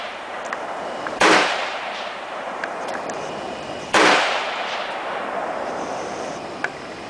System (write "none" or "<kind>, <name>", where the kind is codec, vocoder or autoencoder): vocoder, BigVGAN v2